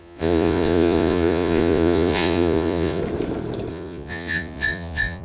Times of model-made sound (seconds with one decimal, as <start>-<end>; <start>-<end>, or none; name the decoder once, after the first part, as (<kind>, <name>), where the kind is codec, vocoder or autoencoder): 0.0-3.0 (vocoder, Vocos); 3.7-5.2